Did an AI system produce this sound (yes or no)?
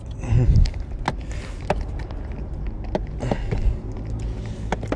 no